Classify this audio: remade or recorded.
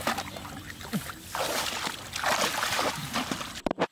recorded